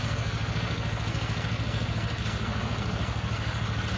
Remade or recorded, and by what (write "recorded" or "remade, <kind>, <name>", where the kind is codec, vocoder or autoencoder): remade, codec, SNAC